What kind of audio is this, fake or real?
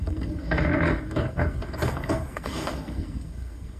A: fake